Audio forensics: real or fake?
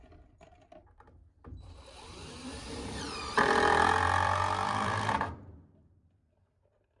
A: fake